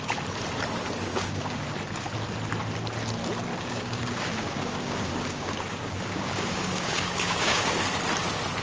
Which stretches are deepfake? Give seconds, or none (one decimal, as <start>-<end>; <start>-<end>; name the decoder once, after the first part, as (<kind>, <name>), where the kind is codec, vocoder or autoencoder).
1.1-1.7 (codec, DAC); 3.5-7.8